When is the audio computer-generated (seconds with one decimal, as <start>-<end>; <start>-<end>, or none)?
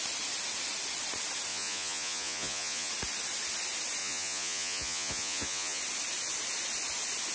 1.5-2.9; 4.0-5.8